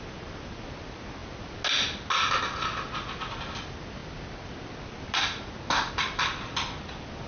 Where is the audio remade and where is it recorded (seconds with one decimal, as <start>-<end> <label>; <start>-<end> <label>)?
0.0-7.3 recorded